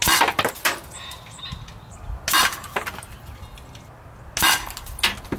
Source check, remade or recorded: recorded